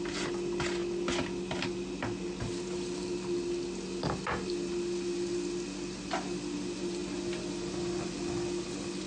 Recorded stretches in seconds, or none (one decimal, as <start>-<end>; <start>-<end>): 0.0-9.1